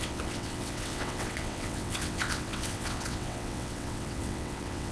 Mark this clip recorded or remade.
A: remade